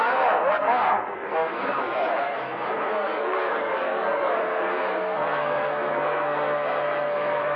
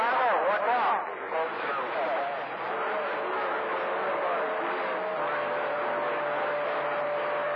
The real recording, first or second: second